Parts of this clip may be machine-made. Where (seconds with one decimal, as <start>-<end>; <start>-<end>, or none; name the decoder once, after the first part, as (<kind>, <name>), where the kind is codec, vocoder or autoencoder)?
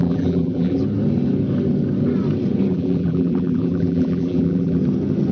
0.0-0.8 (vocoder, BigVGAN v2); 2.7-4.8